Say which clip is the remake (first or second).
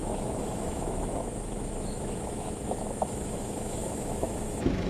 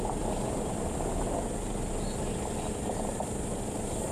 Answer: first